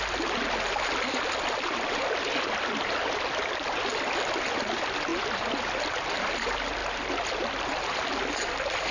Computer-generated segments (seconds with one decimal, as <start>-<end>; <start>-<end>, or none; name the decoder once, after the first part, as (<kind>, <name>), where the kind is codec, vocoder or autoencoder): none